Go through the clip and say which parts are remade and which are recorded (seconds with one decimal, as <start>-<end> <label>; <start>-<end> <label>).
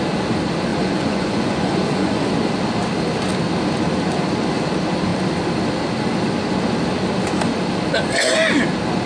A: 0.0-0.7 recorded; 0.7-2.3 remade; 2.3-9.1 recorded